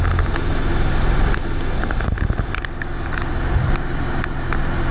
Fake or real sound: real